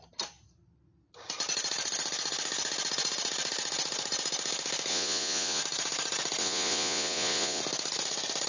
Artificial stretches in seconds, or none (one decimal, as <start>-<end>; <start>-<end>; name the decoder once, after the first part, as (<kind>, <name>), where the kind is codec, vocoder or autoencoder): 4.9-5.6 (vocoder, Vocos); 6.4-7.6